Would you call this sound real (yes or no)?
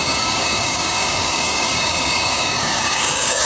no